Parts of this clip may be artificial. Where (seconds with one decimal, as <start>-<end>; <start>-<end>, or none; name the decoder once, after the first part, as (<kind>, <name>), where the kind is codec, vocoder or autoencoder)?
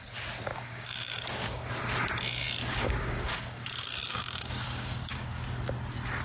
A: 0.5-1.7 (codec, DAC); 2.7-5.6